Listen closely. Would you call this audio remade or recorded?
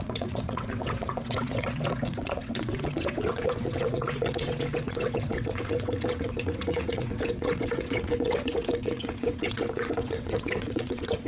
remade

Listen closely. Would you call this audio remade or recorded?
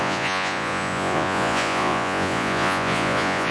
remade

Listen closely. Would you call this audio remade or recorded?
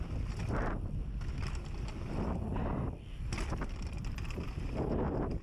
recorded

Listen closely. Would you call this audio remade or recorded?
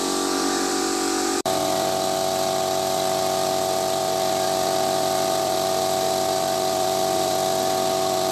remade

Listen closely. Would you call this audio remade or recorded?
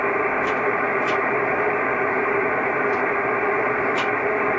remade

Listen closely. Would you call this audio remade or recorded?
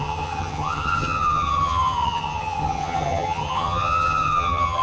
remade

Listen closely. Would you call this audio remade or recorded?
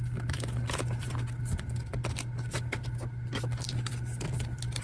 recorded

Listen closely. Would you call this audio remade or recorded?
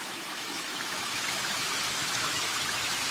remade